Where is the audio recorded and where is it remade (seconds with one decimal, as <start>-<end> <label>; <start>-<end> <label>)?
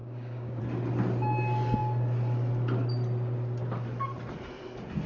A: 0.0-0.6 remade; 0.6-5.1 recorded